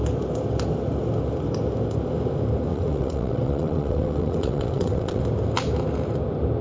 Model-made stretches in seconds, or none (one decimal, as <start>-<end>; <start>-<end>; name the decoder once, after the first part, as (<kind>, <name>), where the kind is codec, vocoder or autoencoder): 2.7-5.2 (vocoder, WaveNeXt)